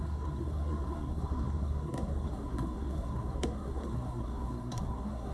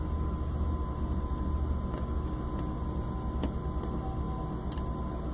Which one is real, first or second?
second